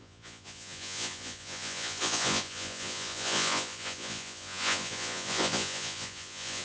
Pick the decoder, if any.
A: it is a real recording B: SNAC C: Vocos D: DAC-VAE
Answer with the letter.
C